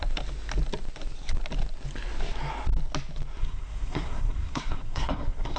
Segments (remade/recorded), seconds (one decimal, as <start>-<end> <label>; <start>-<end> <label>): 0.0-3.4 recorded; 3.4-5.6 remade